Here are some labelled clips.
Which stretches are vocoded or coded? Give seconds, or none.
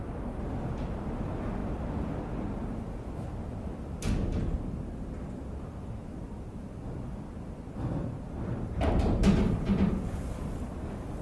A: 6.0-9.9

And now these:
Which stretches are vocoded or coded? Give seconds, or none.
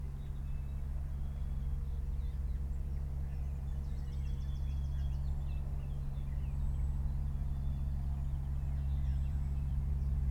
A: 9.1-9.9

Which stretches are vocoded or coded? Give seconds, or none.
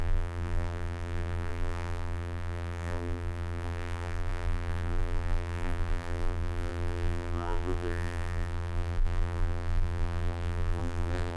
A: 0.0-11.4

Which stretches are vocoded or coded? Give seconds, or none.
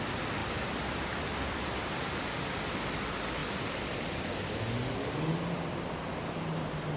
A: 0.4-1.9; 6.1-7.0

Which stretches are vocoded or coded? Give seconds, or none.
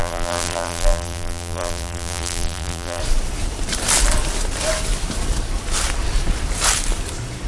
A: 0.0-3.0